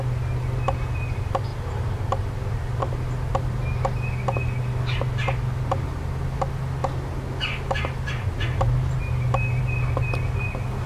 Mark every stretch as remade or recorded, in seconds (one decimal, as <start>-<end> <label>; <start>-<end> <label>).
0.0-10.9 recorded